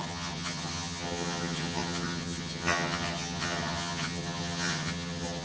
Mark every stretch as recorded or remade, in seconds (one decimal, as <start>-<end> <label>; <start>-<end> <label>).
0.0-5.4 remade